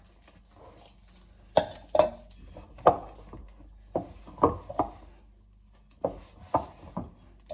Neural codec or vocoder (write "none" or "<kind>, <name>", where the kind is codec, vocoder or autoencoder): none